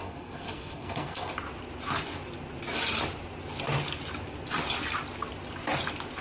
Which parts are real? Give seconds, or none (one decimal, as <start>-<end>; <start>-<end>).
1.3-6.2